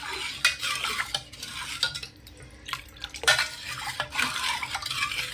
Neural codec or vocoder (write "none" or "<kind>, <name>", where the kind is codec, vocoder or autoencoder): none